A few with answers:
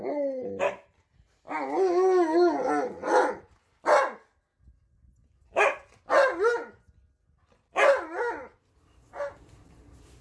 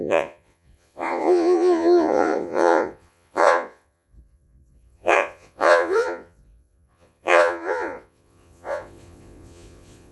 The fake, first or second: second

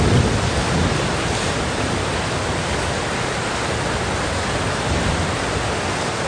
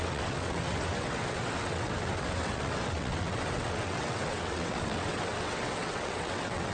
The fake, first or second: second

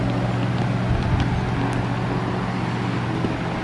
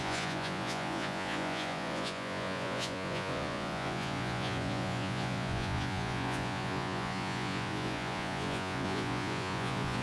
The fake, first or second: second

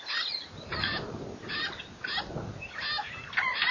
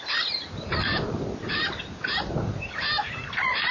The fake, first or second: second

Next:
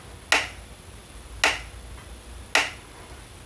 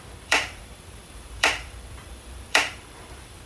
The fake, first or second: second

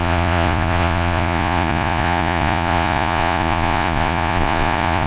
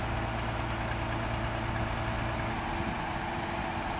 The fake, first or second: first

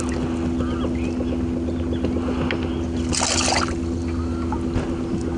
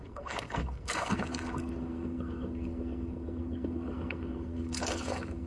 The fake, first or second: second